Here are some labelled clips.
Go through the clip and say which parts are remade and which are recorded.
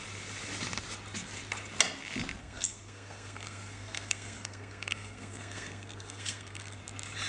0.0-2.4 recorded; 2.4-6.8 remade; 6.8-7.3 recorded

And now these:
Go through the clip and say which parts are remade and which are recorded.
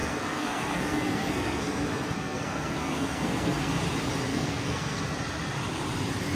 0.0-3.8 remade; 3.8-4.3 recorded; 4.3-5.0 remade; 5.0-6.3 recorded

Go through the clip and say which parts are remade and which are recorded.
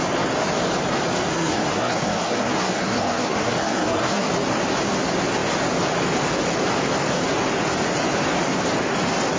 0.0-1.3 recorded; 1.3-4.3 remade; 4.3-9.4 recorded